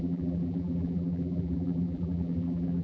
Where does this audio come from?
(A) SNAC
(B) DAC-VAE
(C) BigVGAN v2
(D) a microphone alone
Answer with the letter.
C